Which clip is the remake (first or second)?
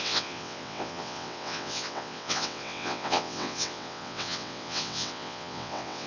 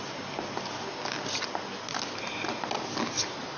first